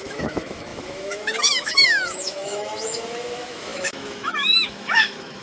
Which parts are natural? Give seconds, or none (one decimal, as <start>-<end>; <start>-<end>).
none